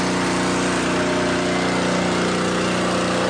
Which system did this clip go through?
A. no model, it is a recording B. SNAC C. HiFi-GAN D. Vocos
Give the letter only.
A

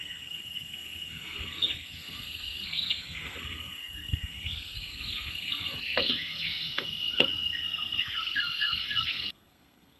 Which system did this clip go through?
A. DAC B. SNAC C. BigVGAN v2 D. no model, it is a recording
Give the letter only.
B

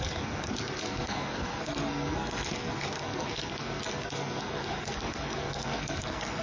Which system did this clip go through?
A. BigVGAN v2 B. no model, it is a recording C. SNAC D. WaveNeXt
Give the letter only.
C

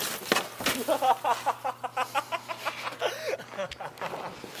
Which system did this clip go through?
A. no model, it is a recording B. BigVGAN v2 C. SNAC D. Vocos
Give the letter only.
A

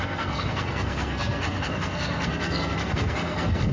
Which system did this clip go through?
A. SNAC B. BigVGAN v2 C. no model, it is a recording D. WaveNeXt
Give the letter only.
A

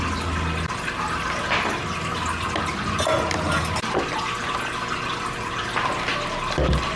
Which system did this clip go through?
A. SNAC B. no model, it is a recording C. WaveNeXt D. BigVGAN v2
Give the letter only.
B